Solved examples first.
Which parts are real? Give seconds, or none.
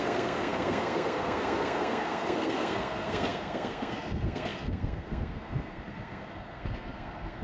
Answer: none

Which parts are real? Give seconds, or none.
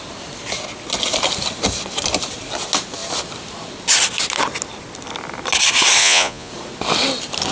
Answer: 0.0-6.0; 6.5-7.5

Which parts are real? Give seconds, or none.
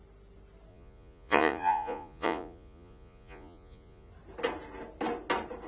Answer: 0.0-0.7; 4.1-5.7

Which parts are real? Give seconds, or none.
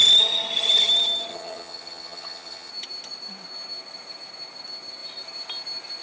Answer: 0.0-1.3; 2.7-6.0